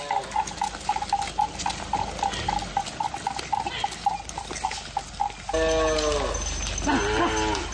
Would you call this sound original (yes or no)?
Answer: yes